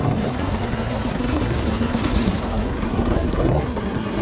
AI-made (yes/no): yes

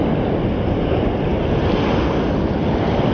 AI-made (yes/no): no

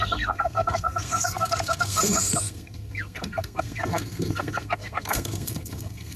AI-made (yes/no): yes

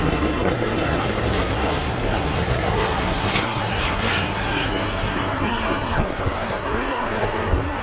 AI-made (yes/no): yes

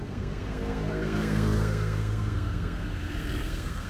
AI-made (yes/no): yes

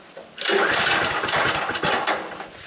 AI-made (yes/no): no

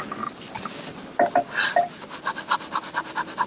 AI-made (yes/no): no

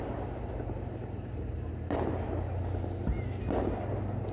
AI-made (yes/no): no